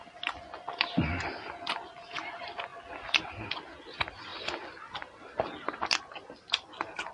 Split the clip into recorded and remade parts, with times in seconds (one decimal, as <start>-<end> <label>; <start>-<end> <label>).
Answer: 0.0-7.1 recorded